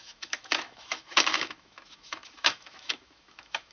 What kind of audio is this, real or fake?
fake